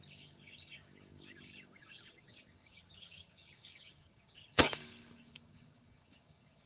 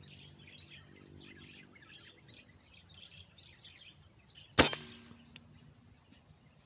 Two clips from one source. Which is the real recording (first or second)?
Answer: second